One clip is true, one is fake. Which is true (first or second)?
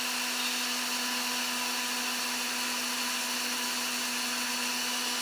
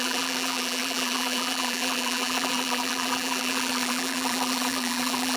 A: first